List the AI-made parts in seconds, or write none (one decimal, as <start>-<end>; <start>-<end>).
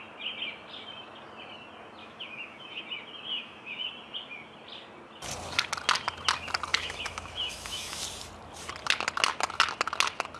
2.0-2.8; 3.3-3.9; 6.7-8.0